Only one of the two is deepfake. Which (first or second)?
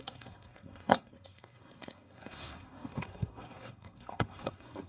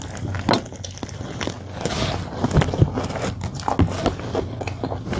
first